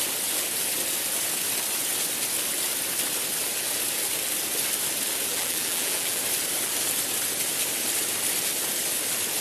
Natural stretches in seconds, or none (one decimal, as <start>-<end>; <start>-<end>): 0.0-5.3; 6.2-9.4